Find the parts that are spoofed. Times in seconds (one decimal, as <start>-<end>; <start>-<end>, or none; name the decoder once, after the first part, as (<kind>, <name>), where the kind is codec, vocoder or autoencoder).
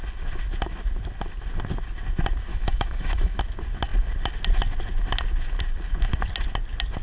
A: 2.5-3.4 (autoencoder, DAC-VAE)